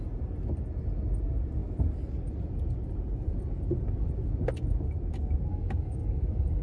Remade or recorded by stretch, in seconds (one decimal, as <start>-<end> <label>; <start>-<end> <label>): 0.0-5.5 recorded; 5.5-6.6 remade